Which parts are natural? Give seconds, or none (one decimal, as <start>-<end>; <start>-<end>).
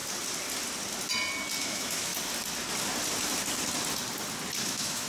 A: 0.0-1.6; 2.1-4.6